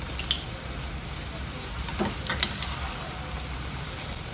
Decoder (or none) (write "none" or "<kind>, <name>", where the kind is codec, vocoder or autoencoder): none